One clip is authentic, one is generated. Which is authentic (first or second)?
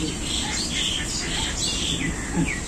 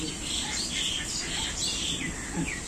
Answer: first